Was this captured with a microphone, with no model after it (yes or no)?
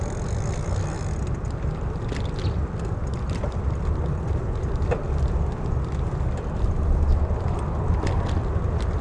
yes